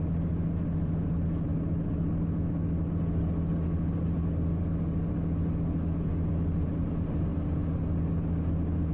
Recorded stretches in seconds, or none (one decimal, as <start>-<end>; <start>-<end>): 0.0-8.9